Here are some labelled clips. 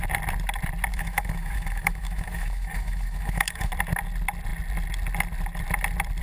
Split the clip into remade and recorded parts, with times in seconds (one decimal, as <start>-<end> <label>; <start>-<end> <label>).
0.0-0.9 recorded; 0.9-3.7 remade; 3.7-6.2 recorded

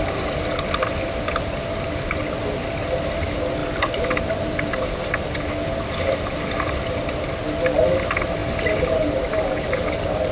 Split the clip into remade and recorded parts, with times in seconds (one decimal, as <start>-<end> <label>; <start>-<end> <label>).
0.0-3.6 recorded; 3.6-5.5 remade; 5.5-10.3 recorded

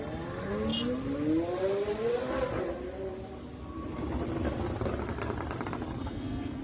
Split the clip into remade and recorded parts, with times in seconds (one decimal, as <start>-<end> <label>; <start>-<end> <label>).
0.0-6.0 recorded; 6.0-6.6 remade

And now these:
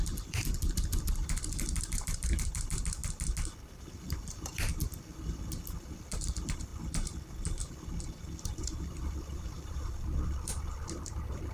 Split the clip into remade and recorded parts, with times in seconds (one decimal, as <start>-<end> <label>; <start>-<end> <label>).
0.0-3.0 remade; 3.0-4.0 recorded; 4.0-6.7 remade; 6.7-8.8 recorded; 8.8-11.5 remade

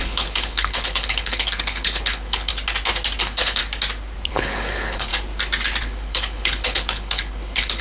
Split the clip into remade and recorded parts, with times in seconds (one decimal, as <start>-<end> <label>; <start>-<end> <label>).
0.0-2.5 remade; 2.5-3.2 recorded; 3.2-3.6 remade; 3.6-4.3 recorded; 4.3-5.1 remade; 5.1-5.8 recorded; 5.8-7.8 remade

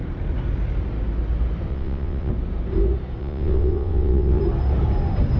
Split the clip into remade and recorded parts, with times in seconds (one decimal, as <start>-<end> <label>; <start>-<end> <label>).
0.0-1.7 recorded; 1.7-2.3 remade; 2.3-3.2 recorded; 3.2-4.4 remade; 4.4-5.4 recorded